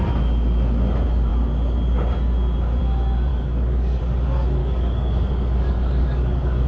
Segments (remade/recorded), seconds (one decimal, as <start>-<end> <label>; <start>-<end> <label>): 0.0-3.3 recorded; 3.3-4.0 remade; 4.0-4.6 recorded; 4.6-6.7 remade